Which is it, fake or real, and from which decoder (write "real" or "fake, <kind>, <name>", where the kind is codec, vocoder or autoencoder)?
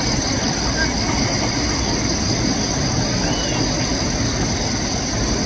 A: real